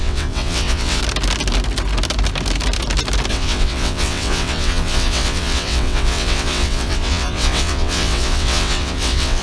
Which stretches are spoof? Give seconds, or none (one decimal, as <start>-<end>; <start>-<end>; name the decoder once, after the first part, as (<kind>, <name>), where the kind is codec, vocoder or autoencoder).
0.0-1.0 (vocoder, WaveNeXt); 3.3-9.4